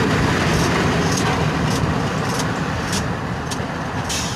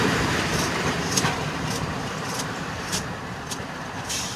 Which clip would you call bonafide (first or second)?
first